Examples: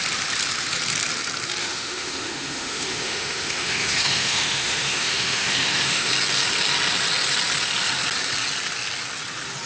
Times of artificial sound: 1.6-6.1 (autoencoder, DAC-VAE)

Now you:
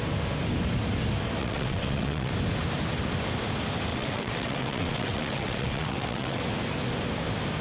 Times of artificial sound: 1.4-2.3 (vocoder, WaveNeXt); 3.9-6.4

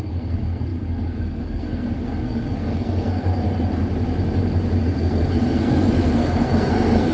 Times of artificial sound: 0.0-3.3 (codec, SNAC); 4.8-7.1

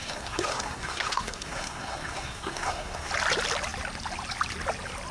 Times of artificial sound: 0.0-3.1 (codec, SNAC)

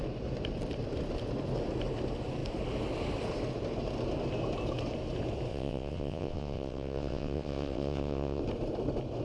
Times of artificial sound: 5.5-8.4 (vocoder, WaveNeXt)